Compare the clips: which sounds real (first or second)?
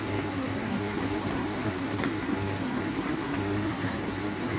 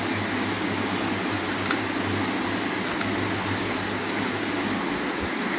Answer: second